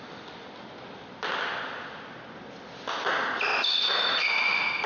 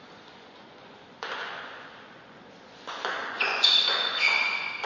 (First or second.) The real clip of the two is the first